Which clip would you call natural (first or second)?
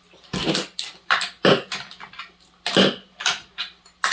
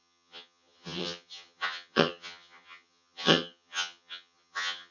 first